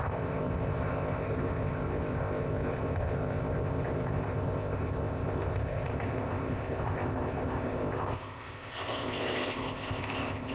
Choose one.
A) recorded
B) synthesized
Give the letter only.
B